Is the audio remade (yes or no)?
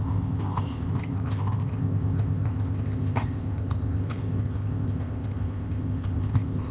yes